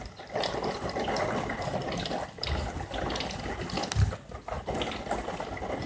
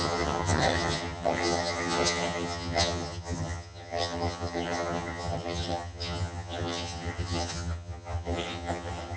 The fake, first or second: second